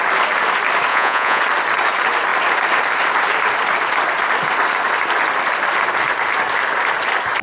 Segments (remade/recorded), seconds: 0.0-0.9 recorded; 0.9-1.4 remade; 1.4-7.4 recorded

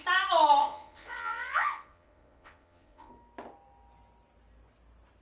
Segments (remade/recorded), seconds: 0.0-0.6 recorded; 0.6-3.1 remade; 3.1-5.2 recorded

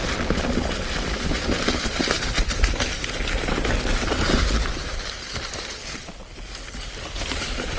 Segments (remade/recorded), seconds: 0.0-7.8 recorded

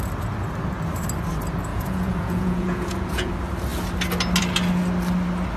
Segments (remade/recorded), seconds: 0.0-1.7 recorded; 1.7-3.3 remade; 3.3-5.6 recorded